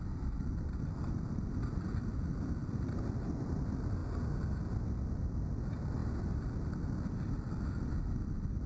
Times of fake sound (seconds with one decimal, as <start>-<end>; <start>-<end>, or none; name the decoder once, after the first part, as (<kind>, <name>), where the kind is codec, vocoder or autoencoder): none